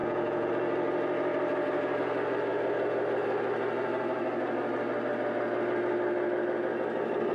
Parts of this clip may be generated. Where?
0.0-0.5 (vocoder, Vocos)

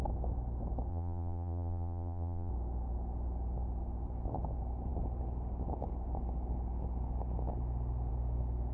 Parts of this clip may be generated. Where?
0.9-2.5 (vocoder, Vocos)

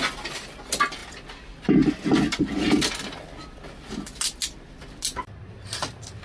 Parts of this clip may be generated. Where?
none

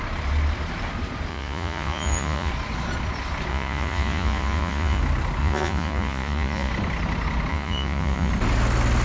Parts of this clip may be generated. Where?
1.3-2.5 (vocoder, Vocos); 3.5-5.0; 5.4-6.7; 7.5-8.3